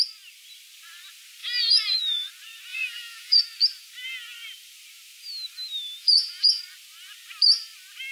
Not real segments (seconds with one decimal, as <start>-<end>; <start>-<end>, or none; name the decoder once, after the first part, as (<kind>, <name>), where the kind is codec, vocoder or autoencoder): 1.4-2.3 (vocoder, Vocos); 2.7-3.4; 6.0-6.6